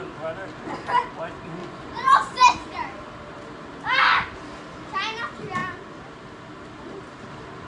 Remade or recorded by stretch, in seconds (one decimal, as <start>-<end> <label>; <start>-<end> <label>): 0.0-1.6 recorded; 1.6-3.1 remade; 3.1-7.7 recorded

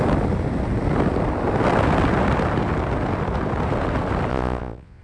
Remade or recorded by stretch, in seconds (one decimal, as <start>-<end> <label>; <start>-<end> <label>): 0.0-4.3 recorded; 4.3-5.0 remade

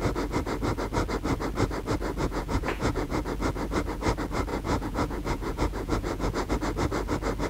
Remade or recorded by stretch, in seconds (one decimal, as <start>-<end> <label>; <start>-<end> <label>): 0.0-2.2 recorded; 2.2-3.1 remade; 3.1-4.5 recorded; 4.5-6.5 remade; 6.5-7.5 recorded

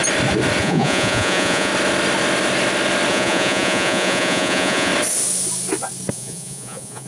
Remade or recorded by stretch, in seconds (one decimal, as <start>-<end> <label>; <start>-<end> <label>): 0.0-0.6 recorded; 0.6-1.7 remade; 1.7-3.1 recorded; 3.1-4.9 remade; 4.9-6.1 recorded; 6.1-7.1 remade

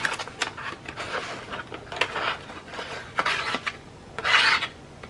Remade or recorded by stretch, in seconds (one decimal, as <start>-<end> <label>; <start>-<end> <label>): 0.0-0.4 remade; 0.4-2.5 recorded; 2.5-5.1 remade

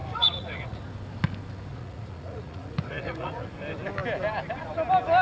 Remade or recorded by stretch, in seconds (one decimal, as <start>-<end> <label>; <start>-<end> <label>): 0.0-0.8 remade; 0.8-1.7 recorded; 1.7-3.5 remade; 3.5-5.2 recorded